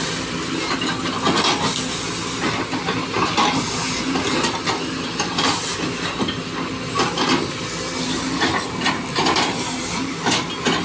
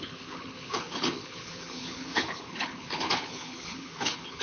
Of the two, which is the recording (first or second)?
first